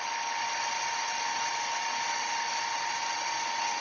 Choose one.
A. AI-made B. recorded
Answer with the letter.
B